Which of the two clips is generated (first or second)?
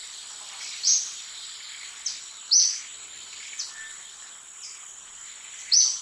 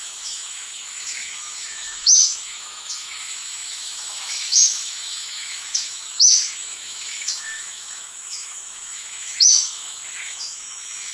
second